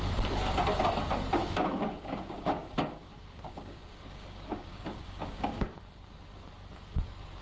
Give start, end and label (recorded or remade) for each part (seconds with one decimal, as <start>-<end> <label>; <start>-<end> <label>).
0.0-1.4 recorded; 1.4-5.8 remade; 5.8-7.4 recorded